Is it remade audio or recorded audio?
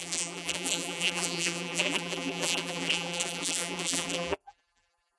remade